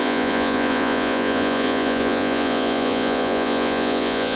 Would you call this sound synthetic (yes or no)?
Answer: yes